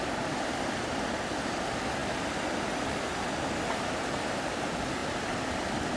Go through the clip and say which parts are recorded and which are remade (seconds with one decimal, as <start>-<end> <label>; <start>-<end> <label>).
0.0-5.0 remade; 5.0-6.0 recorded